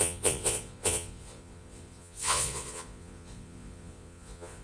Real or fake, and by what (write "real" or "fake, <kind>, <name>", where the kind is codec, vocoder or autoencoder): fake, vocoder, Vocos